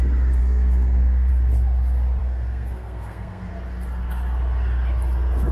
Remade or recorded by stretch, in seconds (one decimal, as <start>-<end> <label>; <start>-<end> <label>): 0.0-0.4 recorded; 0.4-1.3 remade; 1.3-2.2 recorded; 2.2-3.5 remade; 3.5-5.5 recorded